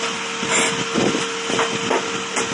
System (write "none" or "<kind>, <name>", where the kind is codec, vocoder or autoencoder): none